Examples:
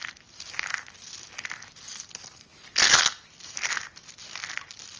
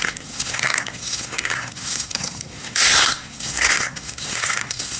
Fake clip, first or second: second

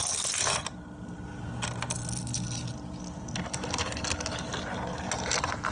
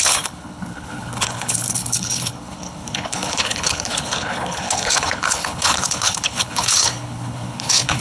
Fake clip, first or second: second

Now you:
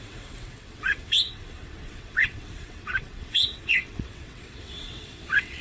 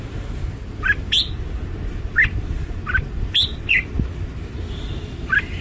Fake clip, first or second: first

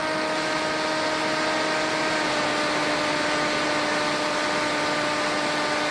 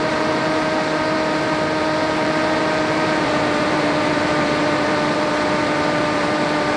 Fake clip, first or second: second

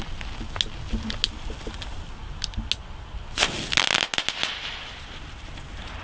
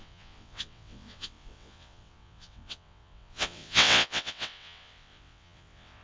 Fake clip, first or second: second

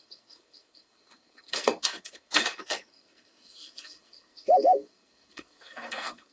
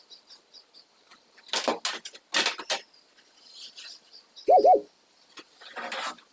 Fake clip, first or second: first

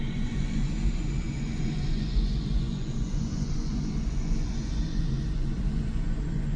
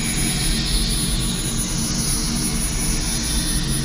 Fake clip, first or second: first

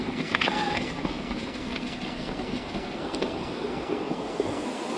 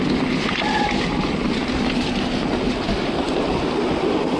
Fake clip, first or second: first